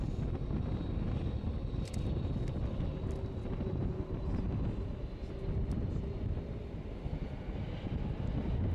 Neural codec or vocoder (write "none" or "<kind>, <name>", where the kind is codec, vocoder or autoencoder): none